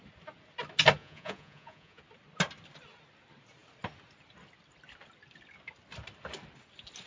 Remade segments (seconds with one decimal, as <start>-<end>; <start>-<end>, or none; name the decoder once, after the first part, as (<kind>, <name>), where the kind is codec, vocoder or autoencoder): 1.0-2.0 (vocoder, Vocos)